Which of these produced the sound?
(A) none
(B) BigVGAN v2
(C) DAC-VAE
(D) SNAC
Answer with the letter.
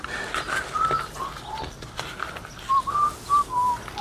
A